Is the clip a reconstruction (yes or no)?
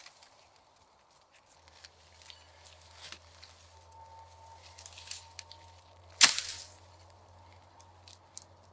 no